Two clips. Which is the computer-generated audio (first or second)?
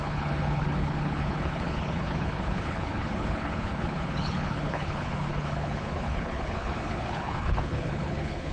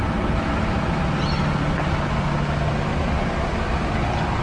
first